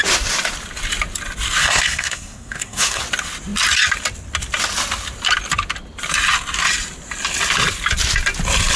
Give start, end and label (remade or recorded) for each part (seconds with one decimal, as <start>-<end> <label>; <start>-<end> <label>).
0.0-1.6 recorded; 1.6-3.0 remade; 3.0-8.8 recorded